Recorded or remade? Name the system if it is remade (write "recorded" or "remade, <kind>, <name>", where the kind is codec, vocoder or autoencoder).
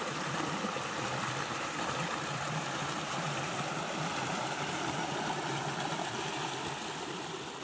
recorded